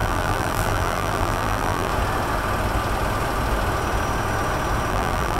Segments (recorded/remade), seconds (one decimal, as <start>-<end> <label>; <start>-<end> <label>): 0.0-1.9 remade; 1.9-4.9 recorded; 4.9-5.4 remade